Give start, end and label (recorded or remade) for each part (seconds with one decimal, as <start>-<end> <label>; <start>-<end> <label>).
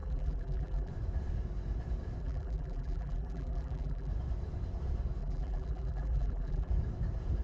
0.0-0.9 remade; 0.9-2.2 recorded; 2.2-4.1 remade; 4.1-5.2 recorded; 5.2-6.7 remade; 6.7-7.4 recorded